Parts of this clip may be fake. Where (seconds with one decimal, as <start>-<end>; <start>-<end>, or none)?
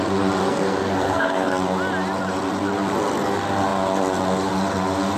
0.4-1.6